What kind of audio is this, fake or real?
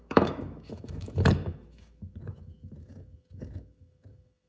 fake